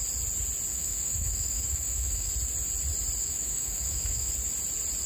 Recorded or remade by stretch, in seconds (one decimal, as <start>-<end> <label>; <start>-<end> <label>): 0.0-0.7 recorded; 0.7-2.3 remade; 2.3-3.2 recorded; 3.2-4.3 remade; 4.3-5.1 recorded